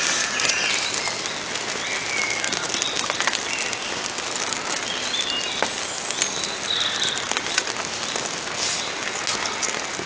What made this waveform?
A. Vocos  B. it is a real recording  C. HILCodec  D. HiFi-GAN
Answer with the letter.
B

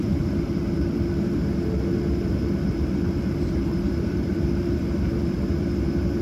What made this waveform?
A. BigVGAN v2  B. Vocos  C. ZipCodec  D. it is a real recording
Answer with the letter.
A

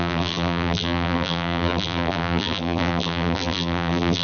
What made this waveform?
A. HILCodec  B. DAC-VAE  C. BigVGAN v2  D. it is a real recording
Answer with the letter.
C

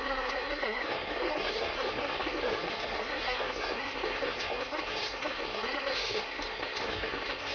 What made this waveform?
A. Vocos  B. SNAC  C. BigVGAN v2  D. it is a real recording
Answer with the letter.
B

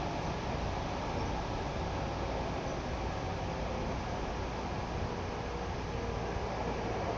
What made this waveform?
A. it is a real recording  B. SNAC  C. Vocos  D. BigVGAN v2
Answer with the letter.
A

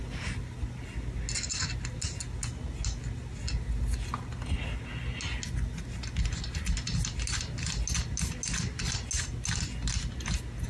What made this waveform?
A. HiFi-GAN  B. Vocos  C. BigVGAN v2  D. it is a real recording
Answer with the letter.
D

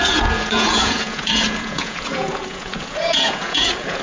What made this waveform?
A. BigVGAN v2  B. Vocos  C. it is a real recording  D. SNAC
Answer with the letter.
B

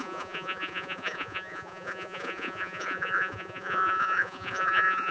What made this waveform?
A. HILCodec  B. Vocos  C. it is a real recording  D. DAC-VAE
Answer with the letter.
B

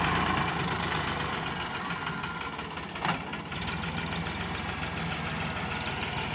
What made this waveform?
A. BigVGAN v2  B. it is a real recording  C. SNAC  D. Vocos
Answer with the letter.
B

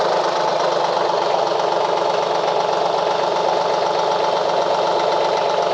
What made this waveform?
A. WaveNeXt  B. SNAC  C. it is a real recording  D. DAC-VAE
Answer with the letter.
C